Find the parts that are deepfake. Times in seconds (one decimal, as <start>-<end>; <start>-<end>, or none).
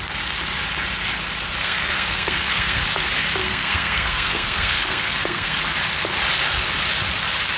1.6-2.8; 3.4-5.6